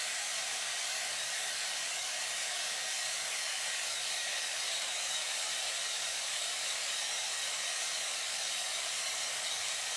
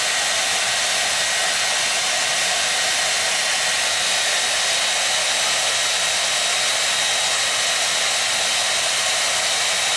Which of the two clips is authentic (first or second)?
second